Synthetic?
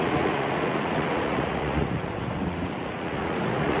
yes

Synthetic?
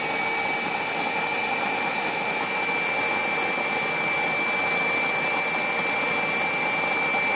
no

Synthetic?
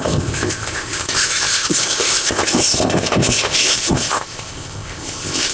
yes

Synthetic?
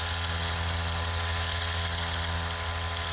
no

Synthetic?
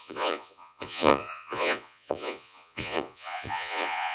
yes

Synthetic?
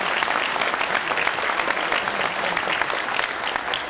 no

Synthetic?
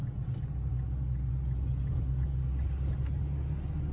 no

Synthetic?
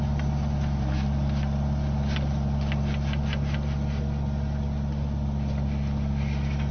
no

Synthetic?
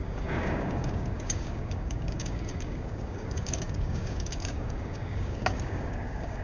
yes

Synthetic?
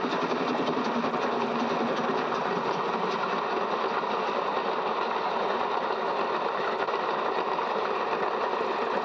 no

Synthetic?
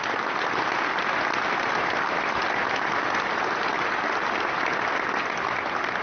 no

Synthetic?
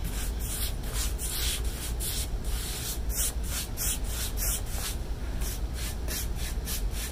no